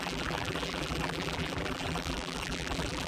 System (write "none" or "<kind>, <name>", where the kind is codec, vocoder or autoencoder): vocoder, BigVGAN v2